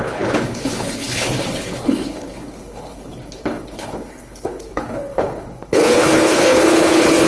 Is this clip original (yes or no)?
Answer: no